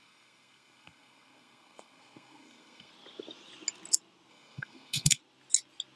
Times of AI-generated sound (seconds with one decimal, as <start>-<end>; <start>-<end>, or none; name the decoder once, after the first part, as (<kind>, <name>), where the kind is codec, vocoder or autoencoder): 0.0-2.9 (codec, SNAC); 4.3-5.2